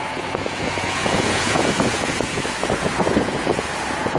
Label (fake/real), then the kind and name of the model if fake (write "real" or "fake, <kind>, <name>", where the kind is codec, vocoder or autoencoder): fake, vocoder, Vocos